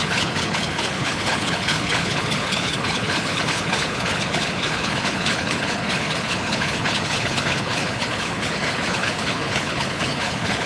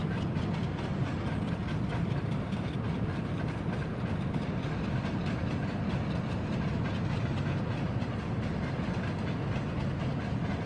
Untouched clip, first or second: second